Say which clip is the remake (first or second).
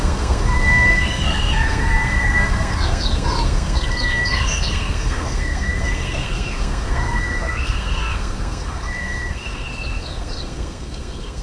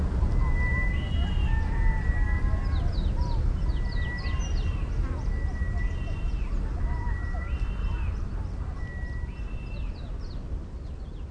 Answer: first